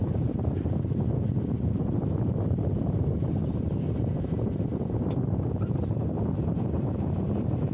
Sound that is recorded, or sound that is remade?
remade